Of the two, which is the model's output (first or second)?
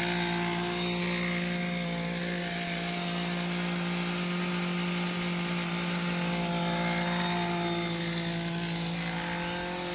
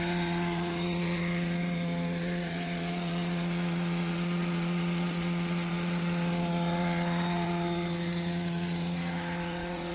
second